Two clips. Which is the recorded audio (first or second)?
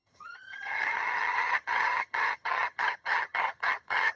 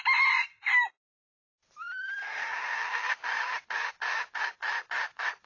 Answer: second